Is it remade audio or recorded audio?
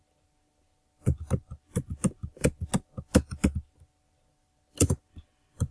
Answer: recorded